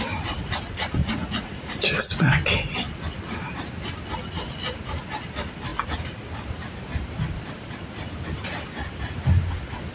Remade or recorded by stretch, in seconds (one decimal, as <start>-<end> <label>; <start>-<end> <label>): 0.0-1.0 recorded; 1.0-2.2 remade; 2.2-9.9 recorded